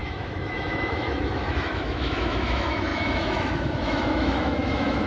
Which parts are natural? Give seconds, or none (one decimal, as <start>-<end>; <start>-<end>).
none